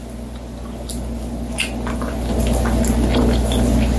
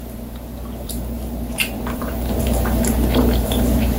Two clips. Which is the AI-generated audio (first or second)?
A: second